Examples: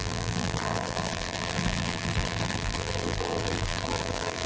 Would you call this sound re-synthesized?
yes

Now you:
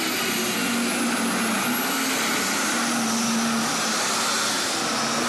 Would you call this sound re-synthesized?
no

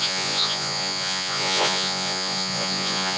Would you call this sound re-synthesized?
yes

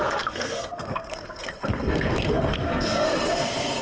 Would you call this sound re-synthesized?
yes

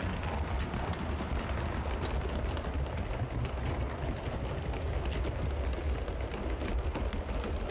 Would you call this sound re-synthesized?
no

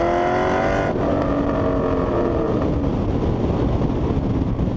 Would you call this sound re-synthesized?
no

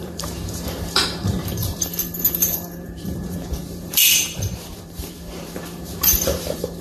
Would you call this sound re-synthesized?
yes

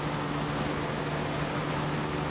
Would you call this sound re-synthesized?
no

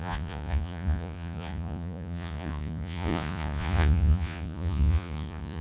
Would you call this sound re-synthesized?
yes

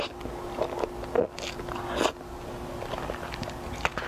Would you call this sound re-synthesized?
no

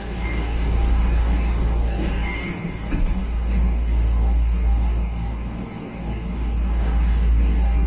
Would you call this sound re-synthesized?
yes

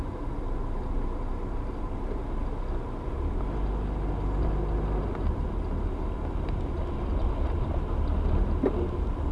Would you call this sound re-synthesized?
no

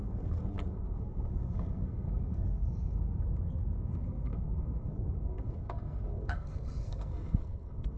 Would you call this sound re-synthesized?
yes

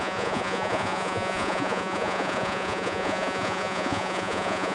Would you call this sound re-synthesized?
yes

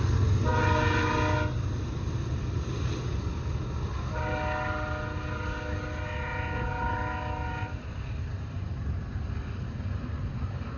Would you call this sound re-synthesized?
no